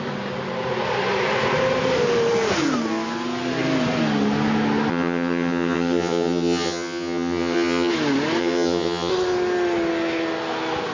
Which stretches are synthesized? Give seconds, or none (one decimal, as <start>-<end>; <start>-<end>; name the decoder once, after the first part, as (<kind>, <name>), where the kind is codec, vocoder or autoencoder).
4.9-7.9 (vocoder, HiFi-GAN); 8.4-9.1